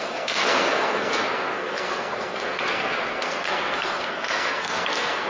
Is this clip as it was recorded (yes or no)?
no